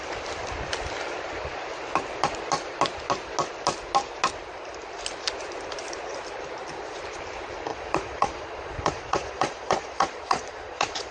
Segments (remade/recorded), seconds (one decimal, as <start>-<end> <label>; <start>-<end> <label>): 0.0-7.7 recorded; 7.7-11.1 remade